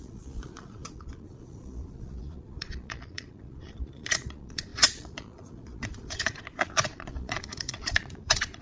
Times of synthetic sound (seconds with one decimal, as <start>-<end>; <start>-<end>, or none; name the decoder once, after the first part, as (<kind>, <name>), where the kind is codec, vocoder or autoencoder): 0.0-8.6 (vocoder, Vocos)